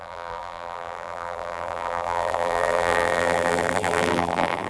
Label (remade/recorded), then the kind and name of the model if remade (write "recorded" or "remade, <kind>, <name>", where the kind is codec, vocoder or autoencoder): remade, vocoder, BigVGAN v2